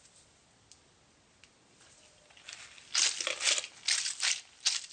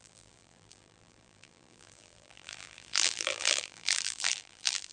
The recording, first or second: first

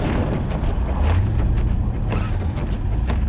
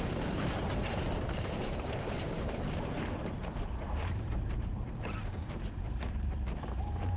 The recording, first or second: first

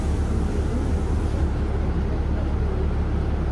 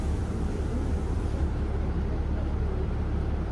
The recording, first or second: first